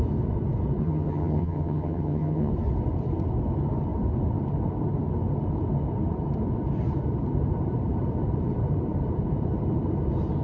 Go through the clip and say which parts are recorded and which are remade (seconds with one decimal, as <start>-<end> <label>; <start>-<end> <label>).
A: 0.0-0.8 recorded; 0.8-2.5 remade; 2.5-10.4 recorded